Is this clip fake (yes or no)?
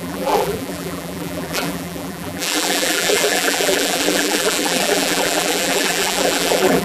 yes